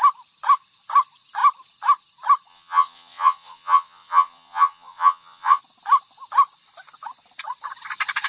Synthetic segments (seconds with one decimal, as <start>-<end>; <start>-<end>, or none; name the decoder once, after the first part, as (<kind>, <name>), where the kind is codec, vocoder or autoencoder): 2.5-5.6 (vocoder, Vocos)